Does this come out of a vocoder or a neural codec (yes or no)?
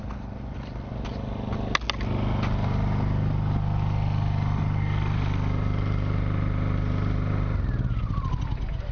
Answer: no